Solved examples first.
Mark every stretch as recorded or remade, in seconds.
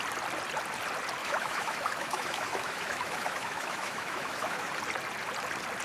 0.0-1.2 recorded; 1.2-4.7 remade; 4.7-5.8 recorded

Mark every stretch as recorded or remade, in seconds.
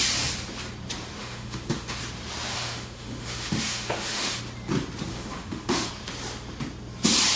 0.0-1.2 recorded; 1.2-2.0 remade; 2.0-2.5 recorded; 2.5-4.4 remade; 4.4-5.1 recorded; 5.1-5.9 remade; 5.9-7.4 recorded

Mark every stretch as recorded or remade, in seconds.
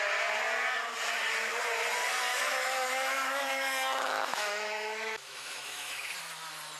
0.0-2.3 recorded; 2.3-6.1 remade; 6.1-6.8 recorded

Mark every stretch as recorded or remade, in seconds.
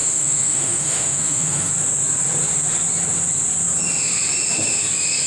0.0-1.7 remade; 1.7-5.3 recorded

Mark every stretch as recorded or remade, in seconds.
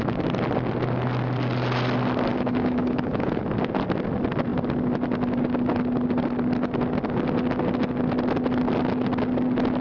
0.0-2.3 recorded; 2.3-3.4 remade; 3.4-9.8 recorded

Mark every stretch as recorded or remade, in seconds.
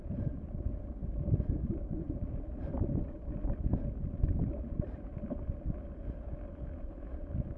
0.0-7.6 recorded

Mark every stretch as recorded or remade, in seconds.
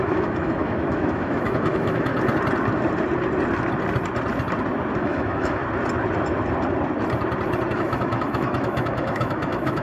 0.0-2.1 remade; 2.1-5.0 recorded; 5.0-5.6 remade; 5.6-7.7 recorded; 7.7-9.8 remade